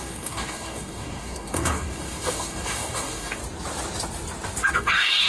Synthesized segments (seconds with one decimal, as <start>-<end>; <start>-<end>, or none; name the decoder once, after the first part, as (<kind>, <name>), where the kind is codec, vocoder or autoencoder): 0.0-3.4 (codec, DAC); 4.7-5.3